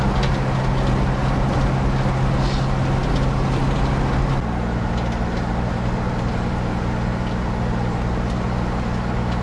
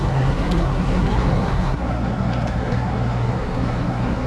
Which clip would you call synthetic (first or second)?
second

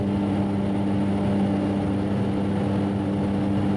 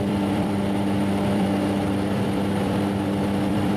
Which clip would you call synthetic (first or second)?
second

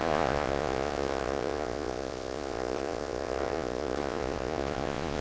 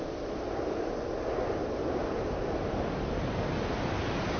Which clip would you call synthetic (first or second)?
first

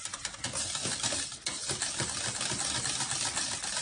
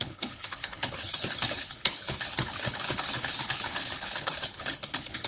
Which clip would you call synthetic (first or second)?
second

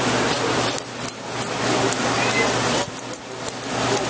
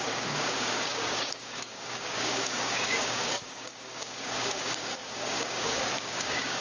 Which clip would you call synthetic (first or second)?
second